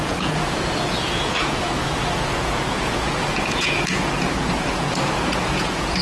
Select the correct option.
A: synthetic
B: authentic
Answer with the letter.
A